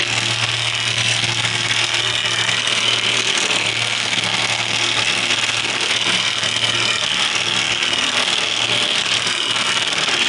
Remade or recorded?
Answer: remade